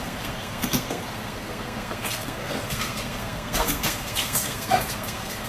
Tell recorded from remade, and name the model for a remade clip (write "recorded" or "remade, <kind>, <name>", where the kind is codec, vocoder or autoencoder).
remade, codec, SNAC